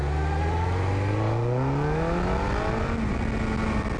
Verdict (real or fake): real